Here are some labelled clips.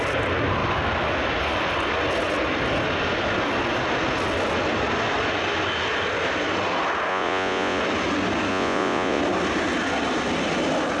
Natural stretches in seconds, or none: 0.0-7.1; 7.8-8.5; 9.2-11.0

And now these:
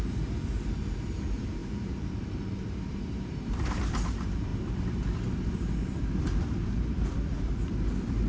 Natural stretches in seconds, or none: 4.5-6.2

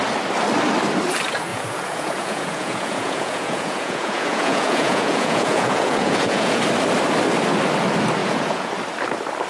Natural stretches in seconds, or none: 0.0-1.5; 6.6-8.2; 8.7-9.5

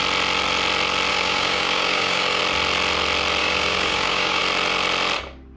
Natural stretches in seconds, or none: 0.0-1.1; 2.4-3.4; 4.4-5.6

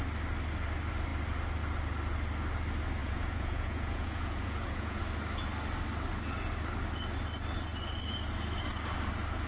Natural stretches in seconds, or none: 0.0-3.0; 5.0-9.5

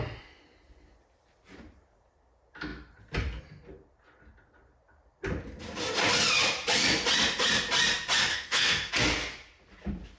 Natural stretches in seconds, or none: 0.0-8.3; 8.9-10.2